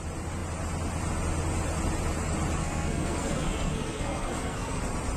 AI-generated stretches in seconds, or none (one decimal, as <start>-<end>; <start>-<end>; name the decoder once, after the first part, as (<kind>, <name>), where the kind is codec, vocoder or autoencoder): 2.6-4.8 (codec, SNAC)